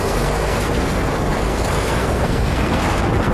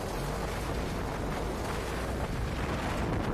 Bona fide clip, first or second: second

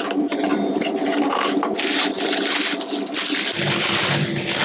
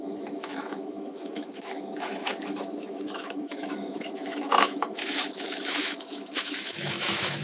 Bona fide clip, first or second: first